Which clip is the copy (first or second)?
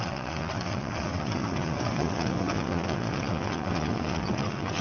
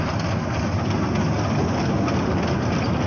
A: first